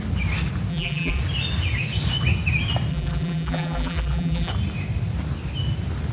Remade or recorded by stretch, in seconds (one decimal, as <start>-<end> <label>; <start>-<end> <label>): 0.0-0.7 recorded; 0.7-1.2 remade; 1.2-2.9 recorded; 2.9-4.5 remade; 4.5-6.1 recorded